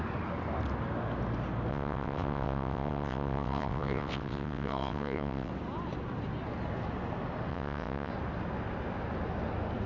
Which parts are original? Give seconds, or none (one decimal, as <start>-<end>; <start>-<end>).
0.0-1.7; 5.5-7.5; 8.1-9.9